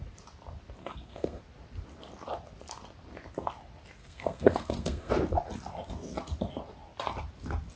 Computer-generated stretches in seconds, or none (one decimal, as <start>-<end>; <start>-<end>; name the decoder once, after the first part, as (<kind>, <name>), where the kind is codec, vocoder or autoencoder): 0.8-1.4 (codec, SNAC); 4.0-5.1